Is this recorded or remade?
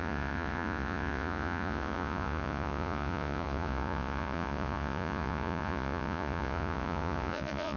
remade